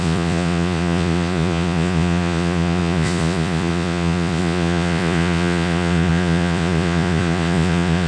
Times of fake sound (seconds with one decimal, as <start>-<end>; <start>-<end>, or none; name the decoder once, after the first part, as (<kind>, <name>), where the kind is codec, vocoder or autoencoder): 0.0-8.1 (vocoder, Vocos)